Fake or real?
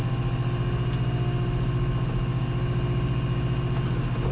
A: real